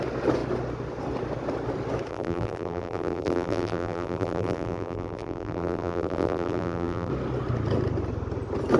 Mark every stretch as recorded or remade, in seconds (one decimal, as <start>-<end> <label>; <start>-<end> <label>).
0.0-2.1 recorded; 2.1-7.1 remade; 7.1-8.8 recorded